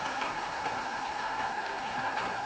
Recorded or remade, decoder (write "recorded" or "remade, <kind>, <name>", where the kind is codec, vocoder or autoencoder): remade, codec, SNAC